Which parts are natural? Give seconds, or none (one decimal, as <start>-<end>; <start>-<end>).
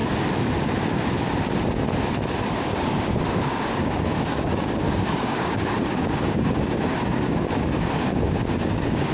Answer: 0.0-2.5